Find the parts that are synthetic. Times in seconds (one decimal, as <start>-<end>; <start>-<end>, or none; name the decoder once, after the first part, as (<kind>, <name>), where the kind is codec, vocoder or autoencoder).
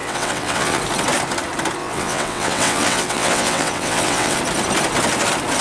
0.0-0.8 (vocoder, WaveNeXt); 1.8-4.4